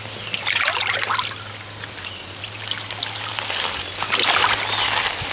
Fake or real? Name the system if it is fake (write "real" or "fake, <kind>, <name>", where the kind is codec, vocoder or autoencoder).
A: real